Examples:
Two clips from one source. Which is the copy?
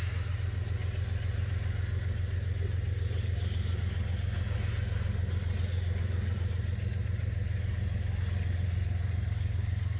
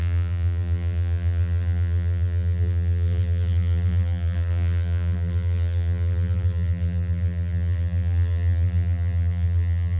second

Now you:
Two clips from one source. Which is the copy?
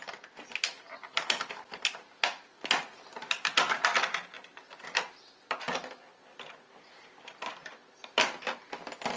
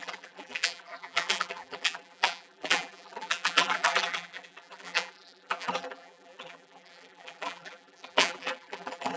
second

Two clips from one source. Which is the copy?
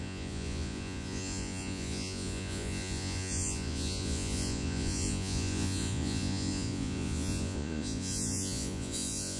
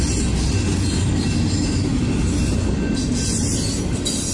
first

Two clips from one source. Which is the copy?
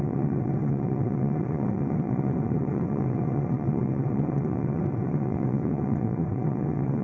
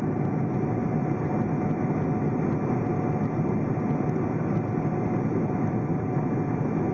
first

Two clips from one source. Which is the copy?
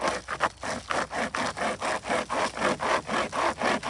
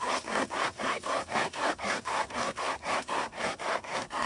second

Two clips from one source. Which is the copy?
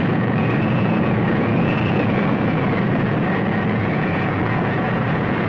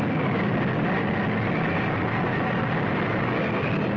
first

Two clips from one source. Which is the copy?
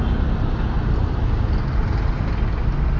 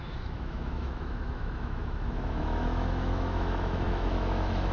second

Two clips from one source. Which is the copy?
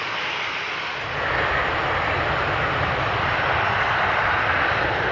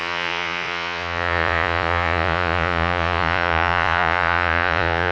second